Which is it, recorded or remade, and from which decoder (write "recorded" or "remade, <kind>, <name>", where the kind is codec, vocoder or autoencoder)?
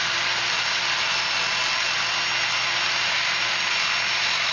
recorded